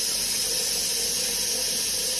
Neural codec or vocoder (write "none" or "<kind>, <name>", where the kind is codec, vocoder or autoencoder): none